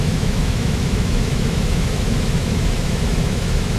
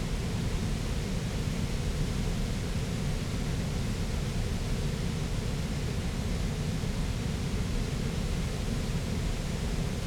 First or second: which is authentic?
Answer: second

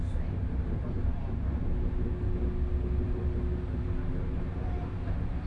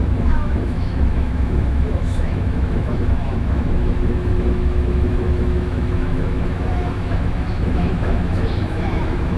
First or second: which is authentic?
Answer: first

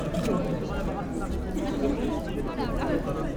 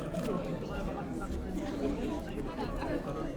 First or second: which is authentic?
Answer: first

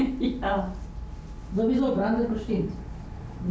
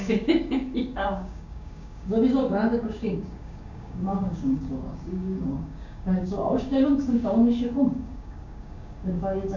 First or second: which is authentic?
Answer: first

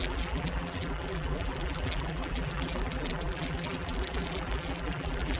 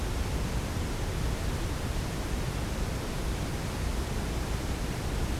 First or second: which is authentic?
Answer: second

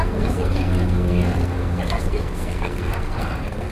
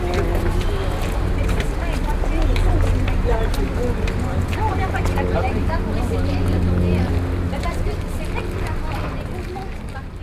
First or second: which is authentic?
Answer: second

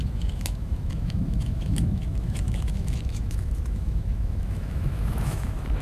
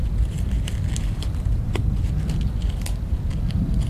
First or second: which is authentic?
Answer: second